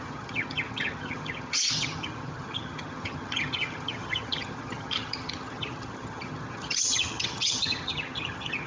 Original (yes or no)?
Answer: no